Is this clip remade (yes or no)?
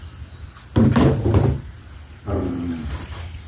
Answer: no